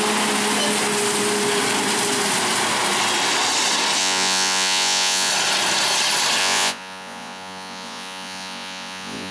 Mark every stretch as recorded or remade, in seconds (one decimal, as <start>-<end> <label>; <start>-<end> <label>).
0.0-4.0 recorded; 4.0-5.3 remade; 5.3-6.4 recorded; 6.4-9.3 remade

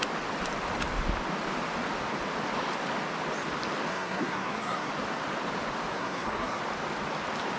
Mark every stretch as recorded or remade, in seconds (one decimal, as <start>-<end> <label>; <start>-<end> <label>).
0.0-3.9 recorded; 3.9-4.9 remade; 4.9-5.9 recorded; 5.9-6.6 remade; 6.6-7.6 recorded